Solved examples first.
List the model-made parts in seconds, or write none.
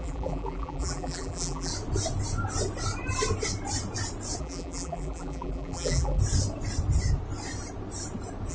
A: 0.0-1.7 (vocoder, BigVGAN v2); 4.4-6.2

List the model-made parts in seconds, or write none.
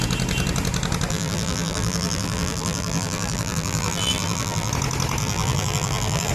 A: 1.1-4.7 (vocoder, BigVGAN v2); 5.2-6.3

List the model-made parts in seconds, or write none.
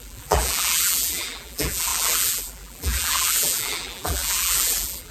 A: 0.0-5.1 (vocoder, BigVGAN v2)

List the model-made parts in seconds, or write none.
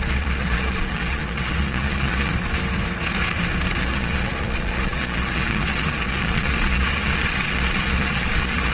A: 0.0-2.3 (vocoder, Vocos); 3.8-8.7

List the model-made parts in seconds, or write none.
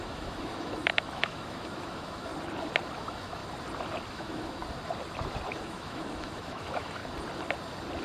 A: 0.0-2.3 (autoencoder, DAC-VAE); 3.0-3.4; 4.1-4.6; 5.6-7.0